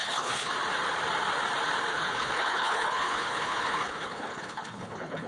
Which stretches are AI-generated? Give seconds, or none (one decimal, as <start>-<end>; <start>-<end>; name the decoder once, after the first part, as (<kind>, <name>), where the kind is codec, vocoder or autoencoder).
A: 0.0-0.5 (codec, HILCodec); 1.9-5.3